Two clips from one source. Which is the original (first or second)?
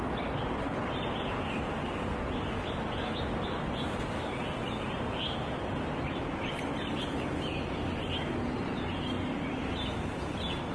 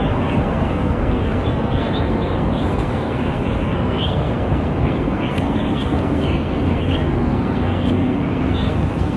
first